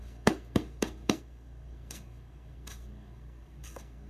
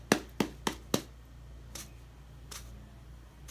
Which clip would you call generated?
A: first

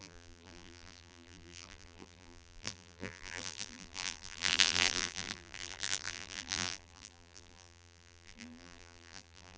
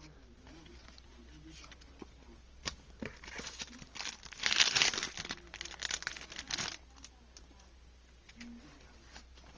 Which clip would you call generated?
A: first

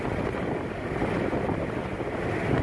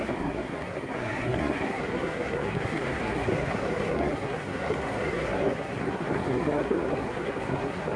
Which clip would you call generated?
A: second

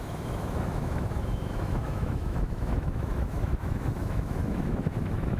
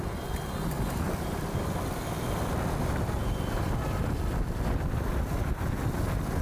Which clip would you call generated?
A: first